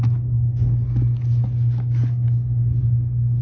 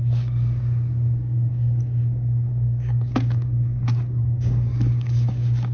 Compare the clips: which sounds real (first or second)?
first